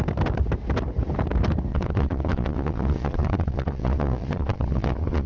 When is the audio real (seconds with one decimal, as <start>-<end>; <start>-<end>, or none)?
0.0-1.7